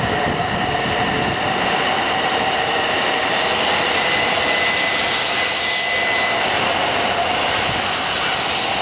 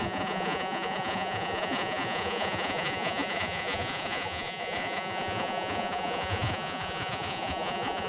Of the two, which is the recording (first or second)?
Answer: first